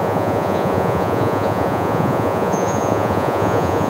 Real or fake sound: fake